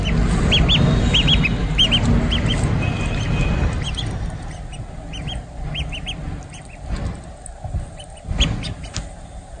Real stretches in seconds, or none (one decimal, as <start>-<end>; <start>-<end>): 0.0-9.6